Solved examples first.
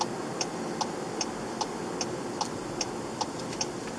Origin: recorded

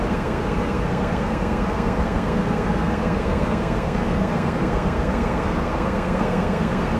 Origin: remade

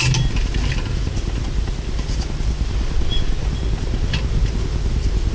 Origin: recorded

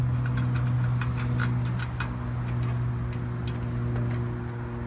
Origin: recorded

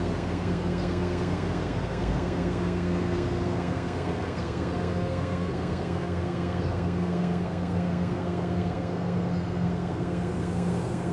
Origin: remade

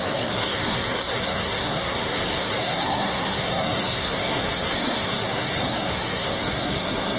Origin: remade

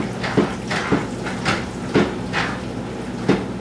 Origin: recorded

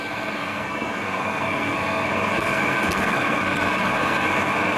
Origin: remade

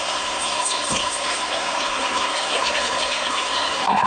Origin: remade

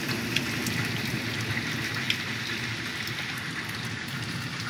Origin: recorded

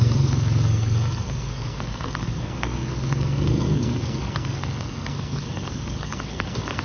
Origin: remade